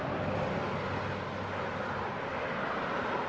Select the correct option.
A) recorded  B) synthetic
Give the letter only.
A